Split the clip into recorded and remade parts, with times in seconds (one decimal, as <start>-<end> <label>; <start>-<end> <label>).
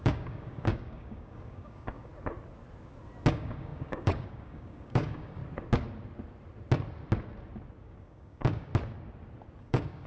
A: 0.0-2.1 remade; 2.1-3.3 recorded; 3.3-5.4 remade; 5.4-7.8 recorded; 7.8-8.7 remade; 8.7-9.6 recorded; 9.6-10.1 remade